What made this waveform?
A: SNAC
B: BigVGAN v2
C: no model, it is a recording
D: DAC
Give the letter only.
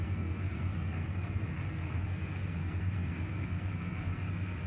A